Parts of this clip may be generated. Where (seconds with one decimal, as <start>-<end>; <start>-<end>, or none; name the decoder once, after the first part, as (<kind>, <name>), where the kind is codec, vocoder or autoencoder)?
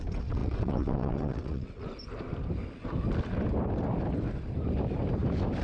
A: 0.0-1.8 (vocoder, WaveNeXt)